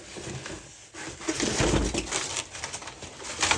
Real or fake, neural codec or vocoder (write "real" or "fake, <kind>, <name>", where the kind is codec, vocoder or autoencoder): real